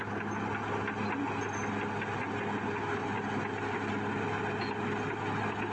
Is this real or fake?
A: real